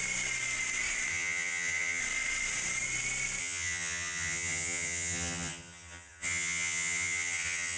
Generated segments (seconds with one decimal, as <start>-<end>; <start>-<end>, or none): 1.1-2.0; 3.4-7.8